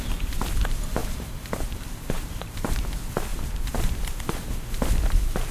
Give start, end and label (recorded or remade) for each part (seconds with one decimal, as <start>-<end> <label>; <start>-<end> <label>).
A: 0.0-1.0 recorded; 1.0-2.7 remade; 2.7-3.3 recorded; 3.3-4.4 remade; 4.4-5.5 recorded